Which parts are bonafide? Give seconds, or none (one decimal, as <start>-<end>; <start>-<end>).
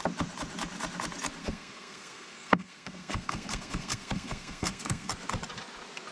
0.0-1.4; 5.1-6.1